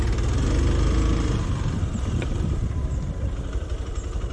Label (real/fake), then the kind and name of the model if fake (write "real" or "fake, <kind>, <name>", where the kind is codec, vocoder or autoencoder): real